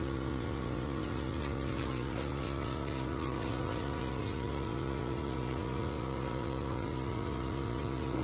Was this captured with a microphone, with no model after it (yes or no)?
no